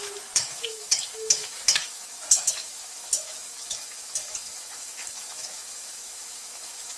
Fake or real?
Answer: fake